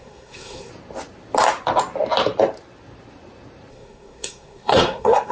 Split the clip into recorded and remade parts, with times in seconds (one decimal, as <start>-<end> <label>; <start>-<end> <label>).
0.0-0.7 remade; 0.7-3.7 recorded; 3.7-5.3 remade